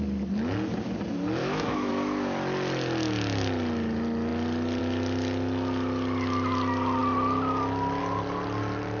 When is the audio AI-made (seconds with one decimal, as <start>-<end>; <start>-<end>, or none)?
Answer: 1.4-1.9